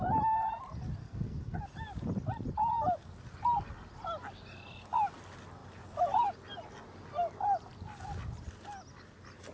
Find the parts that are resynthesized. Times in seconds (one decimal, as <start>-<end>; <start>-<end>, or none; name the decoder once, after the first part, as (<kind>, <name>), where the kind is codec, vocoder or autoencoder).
1.0-1.6 (codec, SNAC)